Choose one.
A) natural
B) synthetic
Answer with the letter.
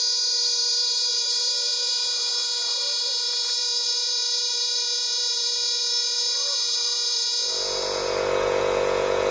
B